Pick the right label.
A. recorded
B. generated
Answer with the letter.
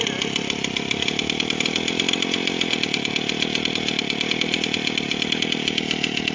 A